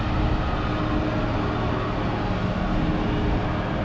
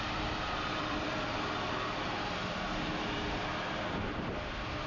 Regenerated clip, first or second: second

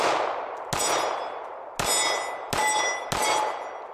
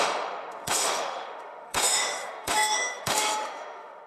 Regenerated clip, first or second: second